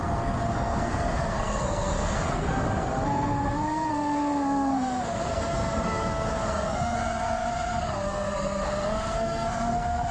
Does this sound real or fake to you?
fake